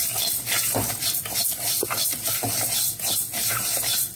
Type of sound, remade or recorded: recorded